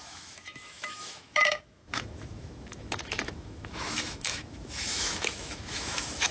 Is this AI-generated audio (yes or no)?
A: yes